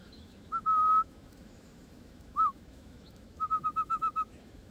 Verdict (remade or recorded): remade